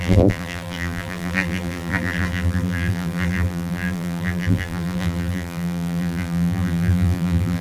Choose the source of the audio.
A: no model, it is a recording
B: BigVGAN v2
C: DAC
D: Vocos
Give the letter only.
B